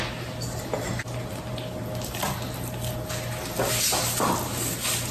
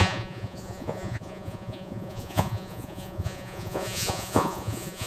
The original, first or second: first